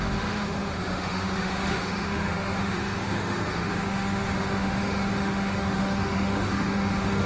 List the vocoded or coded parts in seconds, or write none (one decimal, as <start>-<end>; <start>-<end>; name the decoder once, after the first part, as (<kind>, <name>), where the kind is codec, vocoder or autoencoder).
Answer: 0.0-7.3 (autoencoder, DAC-VAE)